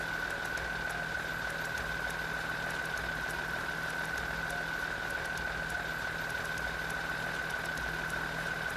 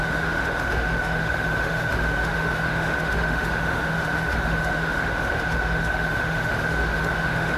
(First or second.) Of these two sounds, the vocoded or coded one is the second